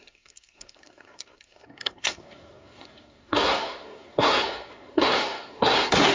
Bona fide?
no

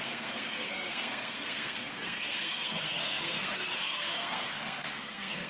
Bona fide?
no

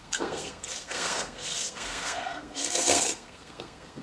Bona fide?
no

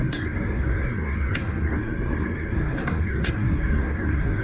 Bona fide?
no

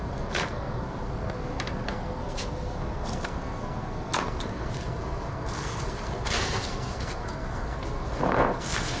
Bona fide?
no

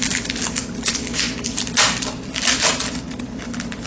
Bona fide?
yes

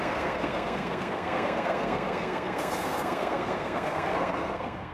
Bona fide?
no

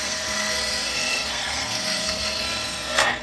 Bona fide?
no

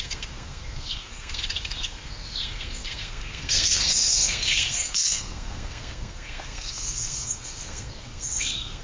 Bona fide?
no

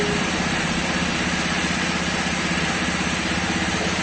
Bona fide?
yes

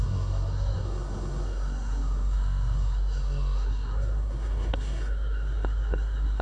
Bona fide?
no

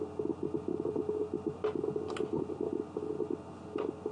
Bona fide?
yes